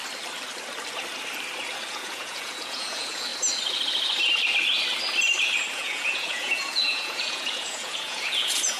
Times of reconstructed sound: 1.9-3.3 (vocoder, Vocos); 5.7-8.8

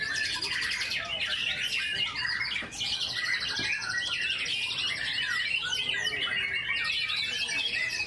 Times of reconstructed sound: none

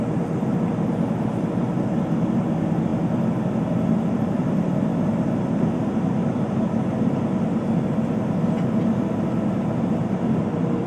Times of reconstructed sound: 0.0-4.9 (vocoder, BigVGAN v2); 9.2-10.9

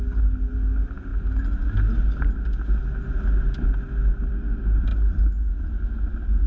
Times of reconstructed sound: none